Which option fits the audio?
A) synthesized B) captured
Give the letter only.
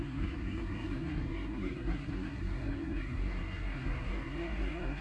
A